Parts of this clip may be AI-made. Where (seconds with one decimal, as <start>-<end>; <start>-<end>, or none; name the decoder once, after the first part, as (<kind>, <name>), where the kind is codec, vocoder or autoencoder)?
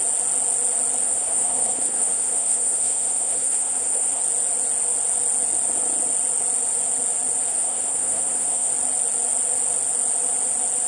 1.0-4.2 (codec, SNAC); 7.5-8.7